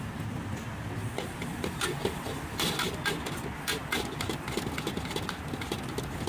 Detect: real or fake real